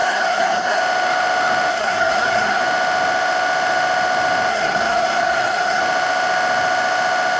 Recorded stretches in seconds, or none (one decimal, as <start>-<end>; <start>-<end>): 0.8-1.7; 2.6-4.5; 5.8-7.4